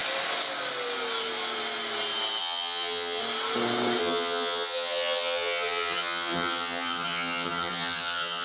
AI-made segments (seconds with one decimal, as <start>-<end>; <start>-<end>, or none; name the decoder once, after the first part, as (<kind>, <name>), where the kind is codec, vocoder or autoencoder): 2.4-3.2 (vocoder, HiFi-GAN); 4.0-8.4